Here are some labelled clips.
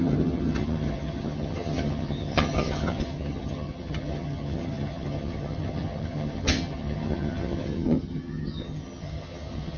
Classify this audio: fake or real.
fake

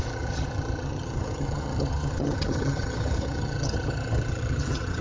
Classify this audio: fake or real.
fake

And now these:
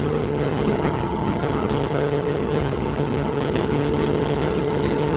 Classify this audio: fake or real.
fake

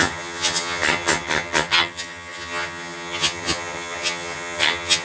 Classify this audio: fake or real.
fake